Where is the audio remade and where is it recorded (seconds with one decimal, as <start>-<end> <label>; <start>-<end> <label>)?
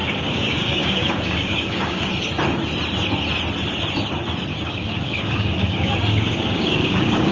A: 0.0-2.1 remade; 2.1-4.5 recorded; 4.5-7.3 remade